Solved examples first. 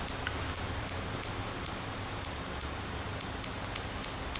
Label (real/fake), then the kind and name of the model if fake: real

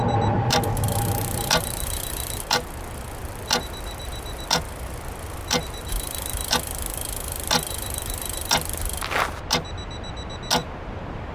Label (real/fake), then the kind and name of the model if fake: real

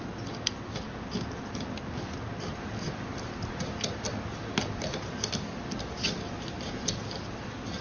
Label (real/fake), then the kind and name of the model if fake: real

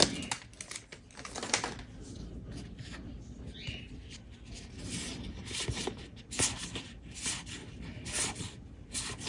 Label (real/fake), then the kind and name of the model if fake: real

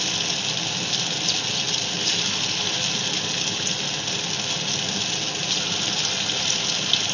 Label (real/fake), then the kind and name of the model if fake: real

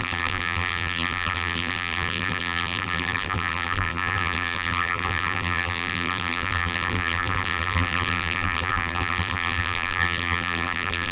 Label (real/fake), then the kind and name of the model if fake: fake, vocoder, BigVGAN v2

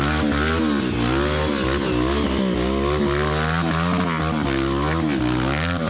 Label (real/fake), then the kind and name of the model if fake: real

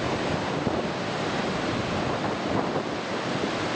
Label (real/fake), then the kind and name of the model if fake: real